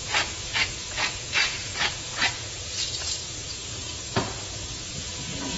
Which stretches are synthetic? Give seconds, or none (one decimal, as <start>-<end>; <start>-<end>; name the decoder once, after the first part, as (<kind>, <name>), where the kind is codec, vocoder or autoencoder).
0.0-5.6 (vocoder, Vocos)